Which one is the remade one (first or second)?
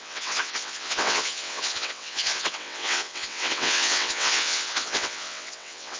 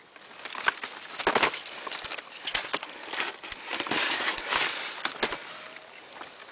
first